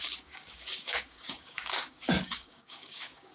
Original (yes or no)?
no